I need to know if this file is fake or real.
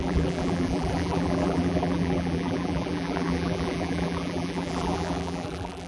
fake